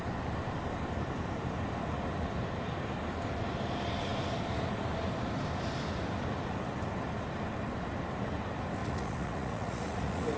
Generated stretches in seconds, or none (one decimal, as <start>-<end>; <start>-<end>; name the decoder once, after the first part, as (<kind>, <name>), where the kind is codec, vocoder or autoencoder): 8.8-10.4 (vocoder, Vocos)